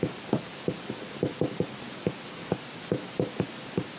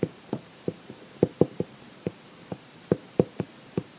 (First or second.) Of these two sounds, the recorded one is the first